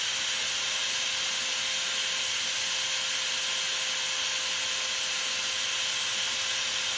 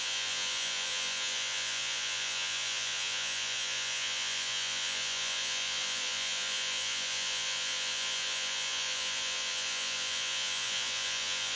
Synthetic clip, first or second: second